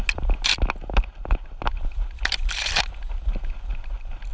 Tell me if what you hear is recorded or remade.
recorded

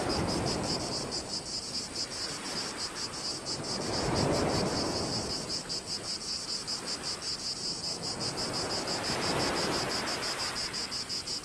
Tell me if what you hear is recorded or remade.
recorded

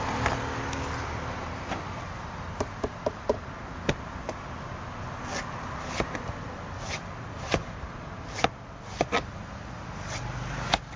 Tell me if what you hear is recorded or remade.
recorded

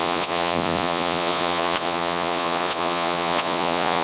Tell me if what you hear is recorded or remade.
remade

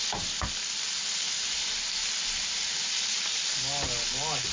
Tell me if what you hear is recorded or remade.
recorded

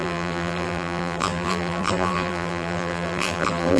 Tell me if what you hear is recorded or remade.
remade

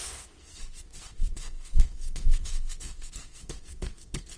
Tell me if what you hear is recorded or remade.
remade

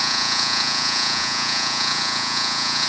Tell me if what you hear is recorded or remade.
remade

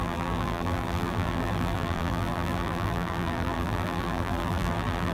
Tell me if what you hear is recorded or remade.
remade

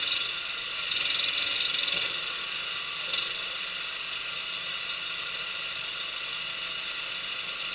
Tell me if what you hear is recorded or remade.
recorded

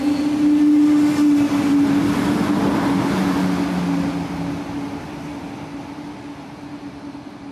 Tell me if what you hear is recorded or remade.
recorded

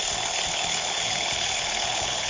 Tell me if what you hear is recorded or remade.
remade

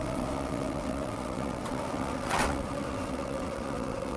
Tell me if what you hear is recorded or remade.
remade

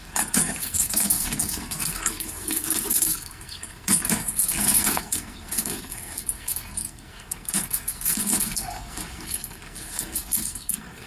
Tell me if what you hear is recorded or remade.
remade